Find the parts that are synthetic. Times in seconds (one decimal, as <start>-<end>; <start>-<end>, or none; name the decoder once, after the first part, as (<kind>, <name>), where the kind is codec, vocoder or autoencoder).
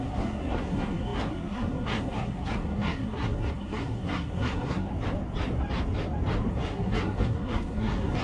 0.0-4.9 (codec, SNAC); 6.5-8.2